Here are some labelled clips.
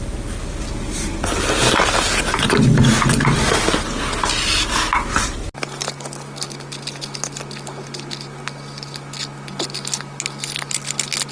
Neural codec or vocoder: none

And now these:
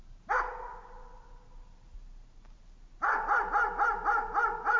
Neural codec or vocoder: none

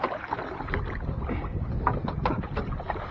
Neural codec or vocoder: none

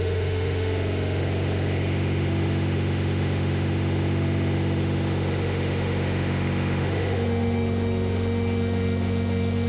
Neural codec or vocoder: autoencoder, DAC-VAE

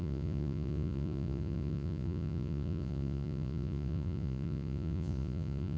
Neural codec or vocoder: vocoder, Vocos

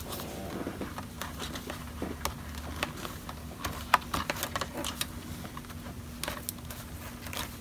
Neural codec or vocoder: none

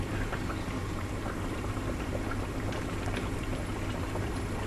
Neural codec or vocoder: vocoder, BigVGAN v2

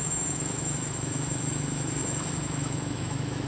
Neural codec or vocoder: autoencoder, DAC-VAE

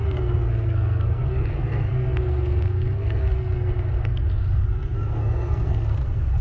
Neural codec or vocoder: codec, SNAC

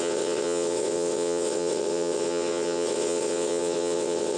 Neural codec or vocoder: vocoder, WaveNeXt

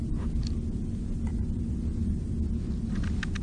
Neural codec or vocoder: none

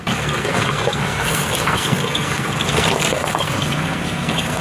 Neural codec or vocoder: codec, SNAC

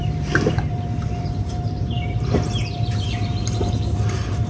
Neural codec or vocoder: vocoder, BigVGAN v2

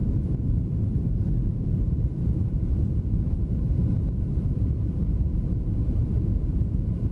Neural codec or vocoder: vocoder, BigVGAN v2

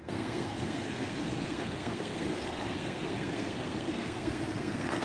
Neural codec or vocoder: codec, SNAC